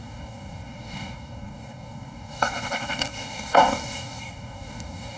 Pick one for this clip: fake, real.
fake